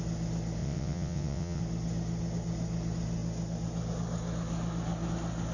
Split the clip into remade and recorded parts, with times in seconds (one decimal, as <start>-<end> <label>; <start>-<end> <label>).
0.0-0.6 recorded; 0.6-1.6 remade; 1.6-5.5 recorded